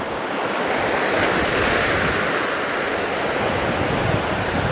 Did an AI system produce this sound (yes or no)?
no